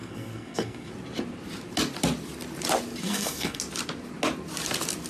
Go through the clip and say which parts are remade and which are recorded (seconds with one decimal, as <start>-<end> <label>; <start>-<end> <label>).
0.0-0.9 remade; 0.9-3.0 recorded; 3.0-3.6 remade; 3.6-5.1 recorded